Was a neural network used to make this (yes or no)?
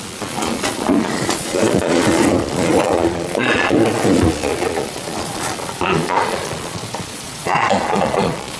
yes